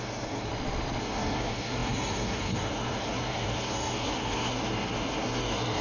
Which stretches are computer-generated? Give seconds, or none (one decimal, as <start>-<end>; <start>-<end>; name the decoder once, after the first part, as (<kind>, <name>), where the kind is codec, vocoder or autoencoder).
0.0-0.5 (codec, SNAC); 1.0-5.8